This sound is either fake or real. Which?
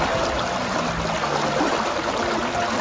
real